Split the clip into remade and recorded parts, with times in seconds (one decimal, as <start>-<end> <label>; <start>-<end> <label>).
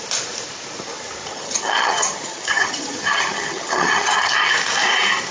0.0-1.3 recorded; 1.3-4.5 remade; 4.5-5.3 recorded